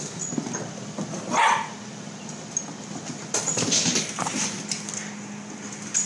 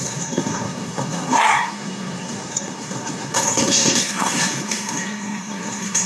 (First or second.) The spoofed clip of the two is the second